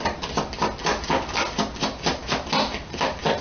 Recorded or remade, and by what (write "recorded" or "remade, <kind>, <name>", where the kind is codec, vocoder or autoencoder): recorded